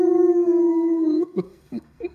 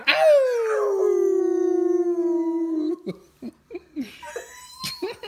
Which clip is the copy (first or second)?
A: first